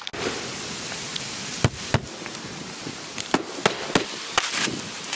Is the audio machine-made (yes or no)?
no